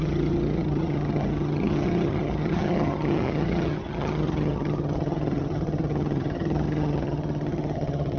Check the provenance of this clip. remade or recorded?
remade